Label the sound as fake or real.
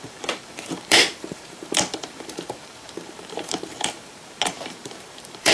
fake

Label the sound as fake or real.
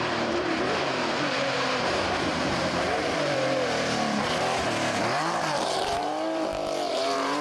fake